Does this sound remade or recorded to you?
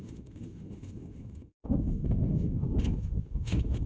remade